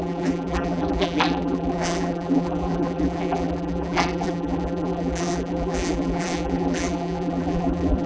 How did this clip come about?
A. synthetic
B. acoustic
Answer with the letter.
A